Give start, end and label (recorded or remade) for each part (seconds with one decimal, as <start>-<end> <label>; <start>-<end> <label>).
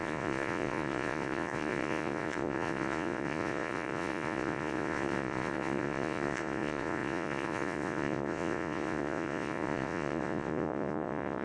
0.0-11.4 remade